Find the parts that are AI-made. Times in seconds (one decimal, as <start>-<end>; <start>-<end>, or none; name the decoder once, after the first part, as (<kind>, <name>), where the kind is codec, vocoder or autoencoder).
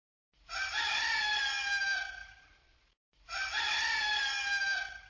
0.0-1.0 (vocoder, BigVGAN v2); 2.2-3.7